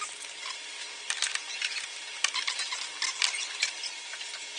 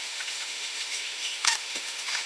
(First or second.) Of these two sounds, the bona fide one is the first